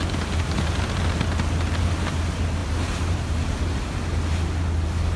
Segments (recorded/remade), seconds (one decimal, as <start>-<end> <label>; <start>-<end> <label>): 0.0-2.6 recorded; 2.6-3.6 remade; 3.6-5.2 recorded

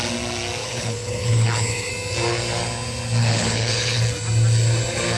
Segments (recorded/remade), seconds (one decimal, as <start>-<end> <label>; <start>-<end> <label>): 0.0-0.6 recorded; 0.6-1.9 remade; 1.9-3.2 recorded; 3.2-4.0 remade; 4.0-5.2 recorded

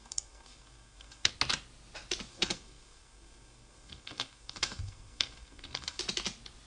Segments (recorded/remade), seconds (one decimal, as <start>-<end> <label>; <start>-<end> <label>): 0.0-1.3 remade; 1.3-2.3 recorded; 2.3-6.0 remade; 6.0-6.7 recorded